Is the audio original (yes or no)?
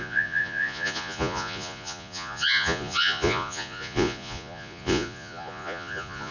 no